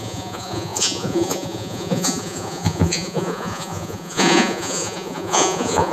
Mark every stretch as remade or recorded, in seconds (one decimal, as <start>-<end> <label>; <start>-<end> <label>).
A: 0.0-5.9 remade